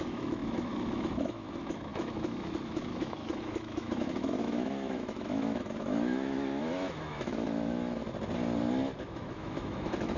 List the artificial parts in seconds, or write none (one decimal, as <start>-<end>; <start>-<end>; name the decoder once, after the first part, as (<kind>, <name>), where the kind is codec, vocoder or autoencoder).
0.0-8.0 (autoencoder, DAC-VAE); 9.0-10.2